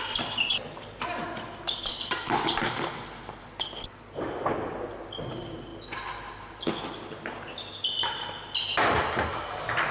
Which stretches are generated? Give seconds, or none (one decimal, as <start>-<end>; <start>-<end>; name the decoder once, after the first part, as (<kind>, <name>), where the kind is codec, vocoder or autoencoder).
none